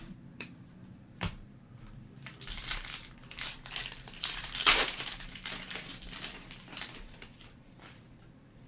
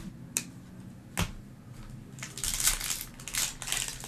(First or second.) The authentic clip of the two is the second